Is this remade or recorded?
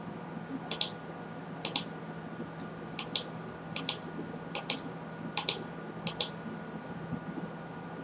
recorded